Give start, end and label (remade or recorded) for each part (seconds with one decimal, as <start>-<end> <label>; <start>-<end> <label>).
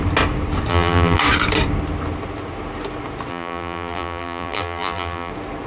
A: 0.0-0.7 recorded; 0.7-1.2 remade; 1.2-3.3 recorded; 3.3-5.3 remade; 5.3-5.7 recorded